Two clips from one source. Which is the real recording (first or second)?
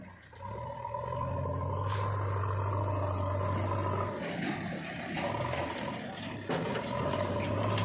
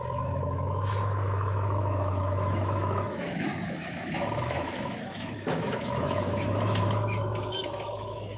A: first